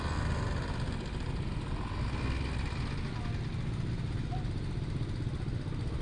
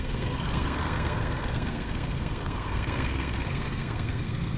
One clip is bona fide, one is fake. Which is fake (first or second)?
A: second